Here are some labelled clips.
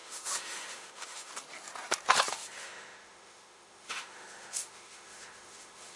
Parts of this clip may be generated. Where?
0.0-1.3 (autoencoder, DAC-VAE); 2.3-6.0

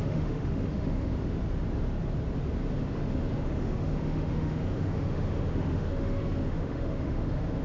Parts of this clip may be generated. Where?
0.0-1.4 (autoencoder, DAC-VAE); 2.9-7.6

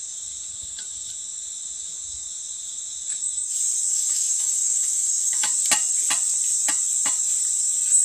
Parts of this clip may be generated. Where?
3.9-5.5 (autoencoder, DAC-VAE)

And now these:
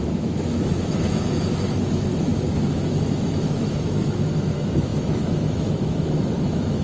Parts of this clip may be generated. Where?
0.0-6.8 (autoencoder, DAC-VAE)

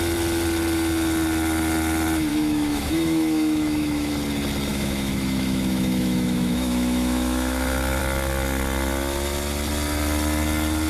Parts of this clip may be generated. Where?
2.3-4.1 (autoencoder, DAC-VAE); 4.7-8.0

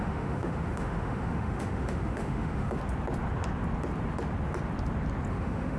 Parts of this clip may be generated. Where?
0.0-2.8 (autoencoder, DAC-VAE); 5.3-5.8

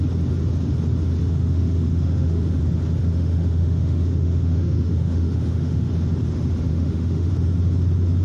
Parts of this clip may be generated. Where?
1.2-2.6 (autoencoder, DAC-VAE); 3.0-5.9; 6.7-7.3

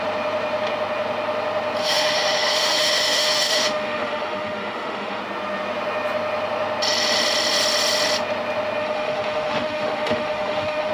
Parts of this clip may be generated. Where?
1.8-5.2 (autoencoder, DAC-VAE); 8.8-10.9